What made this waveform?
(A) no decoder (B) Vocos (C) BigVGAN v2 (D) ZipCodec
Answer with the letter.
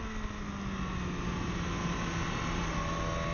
A